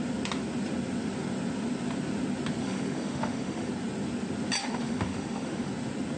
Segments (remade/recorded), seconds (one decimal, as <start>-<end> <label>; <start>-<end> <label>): 0.0-2.6 recorded; 2.6-3.7 remade; 3.7-4.6 recorded; 4.6-5.7 remade; 5.7-6.2 recorded